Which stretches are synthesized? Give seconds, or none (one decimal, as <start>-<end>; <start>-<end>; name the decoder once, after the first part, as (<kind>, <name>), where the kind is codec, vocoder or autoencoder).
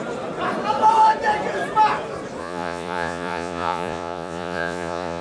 2.4-5.2 (vocoder, Vocos)